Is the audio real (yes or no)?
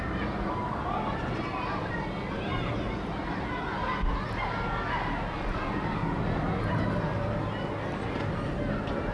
yes